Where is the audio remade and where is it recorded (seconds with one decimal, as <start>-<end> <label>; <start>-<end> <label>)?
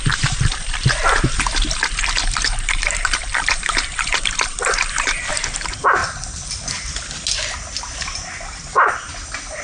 0.0-2.5 recorded; 2.5-5.3 remade; 5.3-9.6 recorded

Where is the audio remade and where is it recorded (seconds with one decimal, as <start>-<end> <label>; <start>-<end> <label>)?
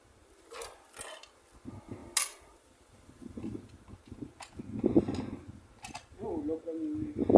0.0-7.4 recorded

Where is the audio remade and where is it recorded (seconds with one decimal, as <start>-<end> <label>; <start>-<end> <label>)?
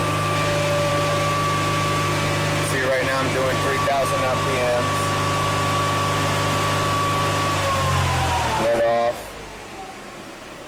0.0-10.7 recorded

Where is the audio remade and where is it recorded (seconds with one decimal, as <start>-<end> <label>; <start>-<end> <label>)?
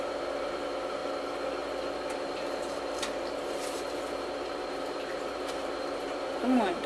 0.0-1.0 remade; 1.0-2.0 recorded; 2.0-6.9 remade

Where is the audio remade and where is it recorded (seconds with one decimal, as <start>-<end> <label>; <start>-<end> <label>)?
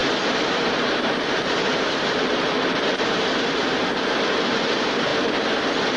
0.0-5.1 remade; 5.1-6.0 recorded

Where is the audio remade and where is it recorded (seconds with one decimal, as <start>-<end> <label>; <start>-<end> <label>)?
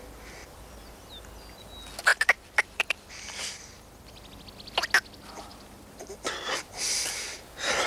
0.0-0.4 recorded; 0.4-1.1 remade; 1.1-2.1 recorded; 2.1-4.0 remade; 4.0-5.5 recorded; 5.5-7.5 remade; 7.5-7.9 recorded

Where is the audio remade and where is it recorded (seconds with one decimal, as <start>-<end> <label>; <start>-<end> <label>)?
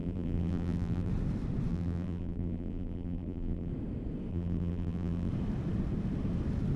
0.0-1.1 remade; 1.1-1.7 recorded; 1.7-3.7 remade; 3.7-4.3 recorded; 4.3-5.3 remade; 5.3-6.8 recorded